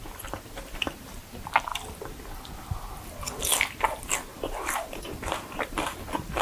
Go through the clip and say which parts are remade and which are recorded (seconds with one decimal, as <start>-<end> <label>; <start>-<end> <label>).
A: 0.0-4.3 recorded; 4.3-6.0 remade; 6.0-6.4 recorded